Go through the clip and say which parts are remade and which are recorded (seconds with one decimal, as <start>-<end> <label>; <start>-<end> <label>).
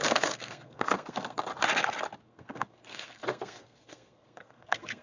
0.0-1.5 remade; 1.5-2.2 recorded; 2.2-5.0 remade